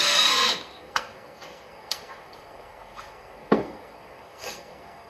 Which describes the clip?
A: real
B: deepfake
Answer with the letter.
B